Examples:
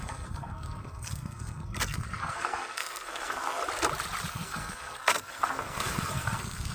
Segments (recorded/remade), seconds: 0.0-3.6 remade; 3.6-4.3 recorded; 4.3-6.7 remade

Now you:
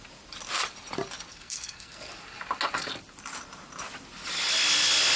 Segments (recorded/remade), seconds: 0.0-1.3 recorded; 1.3-2.1 remade; 2.1-5.2 recorded